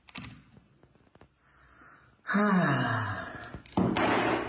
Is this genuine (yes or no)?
yes